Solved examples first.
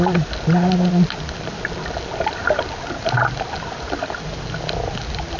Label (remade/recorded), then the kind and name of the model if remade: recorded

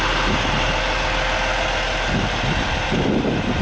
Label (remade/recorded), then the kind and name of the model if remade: recorded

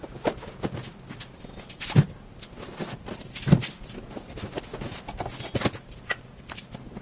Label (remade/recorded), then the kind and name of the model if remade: recorded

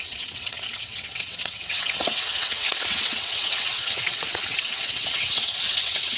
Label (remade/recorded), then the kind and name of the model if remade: remade, vocoder, WaveNeXt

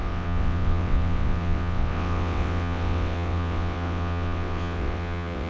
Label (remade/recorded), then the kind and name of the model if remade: remade, vocoder, WaveNeXt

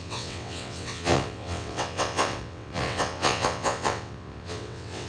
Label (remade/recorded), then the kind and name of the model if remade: remade, vocoder, WaveNeXt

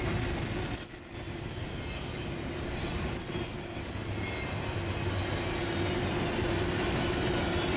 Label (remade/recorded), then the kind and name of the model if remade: recorded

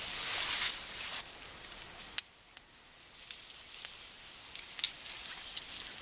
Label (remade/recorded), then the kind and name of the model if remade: recorded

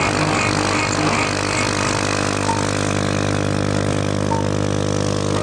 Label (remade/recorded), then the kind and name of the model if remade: recorded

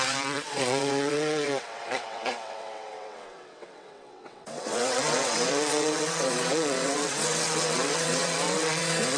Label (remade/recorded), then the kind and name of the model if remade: remade, vocoder, WaveNeXt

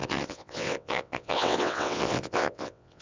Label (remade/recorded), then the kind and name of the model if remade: remade, vocoder, WaveNeXt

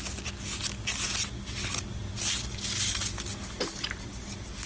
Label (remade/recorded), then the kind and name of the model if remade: recorded